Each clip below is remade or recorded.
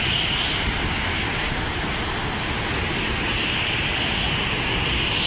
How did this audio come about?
recorded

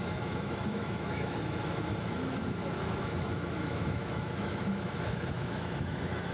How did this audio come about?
remade